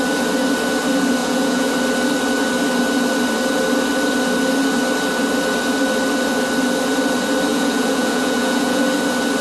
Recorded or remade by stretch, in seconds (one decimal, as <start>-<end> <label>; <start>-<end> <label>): 0.0-1.2 recorded; 1.2-1.7 remade; 1.7-7.5 recorded; 7.5-8.8 remade; 8.8-9.4 recorded